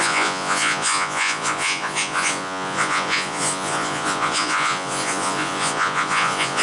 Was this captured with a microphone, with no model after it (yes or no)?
no